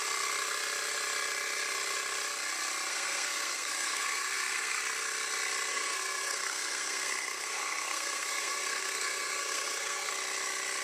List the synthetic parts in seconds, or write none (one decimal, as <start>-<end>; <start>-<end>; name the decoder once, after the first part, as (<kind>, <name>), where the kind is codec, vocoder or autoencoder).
2.9-4.8 (codec, SNAC); 5.7-10.1